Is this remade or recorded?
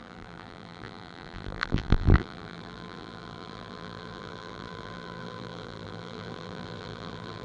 remade